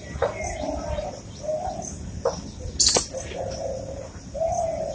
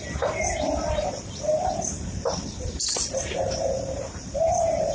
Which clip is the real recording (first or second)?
first